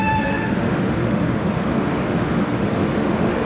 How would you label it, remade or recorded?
remade